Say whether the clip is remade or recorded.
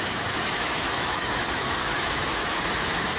remade